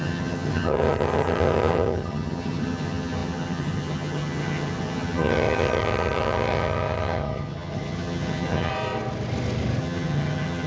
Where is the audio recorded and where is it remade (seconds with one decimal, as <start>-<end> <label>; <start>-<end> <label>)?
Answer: 0.0-8.7 remade; 8.7-9.8 recorded; 9.8-10.7 remade